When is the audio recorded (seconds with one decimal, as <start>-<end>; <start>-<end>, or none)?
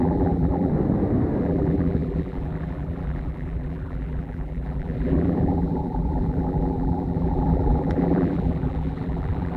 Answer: 0.7-1.4